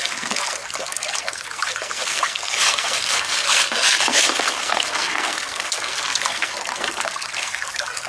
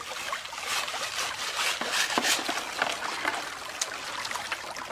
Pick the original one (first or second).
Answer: second